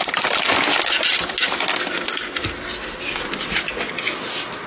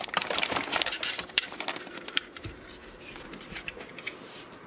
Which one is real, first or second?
first